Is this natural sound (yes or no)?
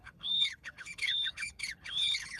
no